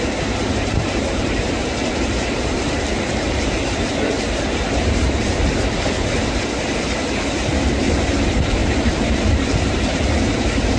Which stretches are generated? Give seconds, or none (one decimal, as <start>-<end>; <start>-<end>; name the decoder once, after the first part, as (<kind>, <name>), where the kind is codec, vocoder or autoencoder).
0.0-10.8 (vocoder, BigVGAN v2)